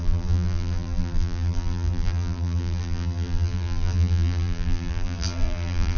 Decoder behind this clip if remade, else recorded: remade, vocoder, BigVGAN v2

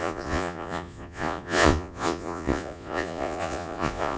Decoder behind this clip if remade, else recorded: remade, vocoder, Vocos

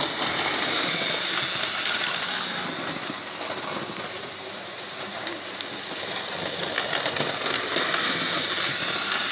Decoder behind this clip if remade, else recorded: recorded